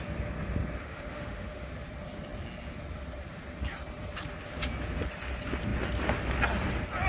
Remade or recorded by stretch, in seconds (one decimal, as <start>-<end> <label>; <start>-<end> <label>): 0.0-0.8 recorded; 0.8-1.7 remade; 1.7-7.1 recorded